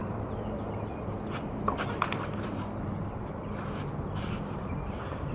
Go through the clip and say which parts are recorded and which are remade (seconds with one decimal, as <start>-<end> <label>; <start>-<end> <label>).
0.0-1.4 remade; 1.4-5.3 recorded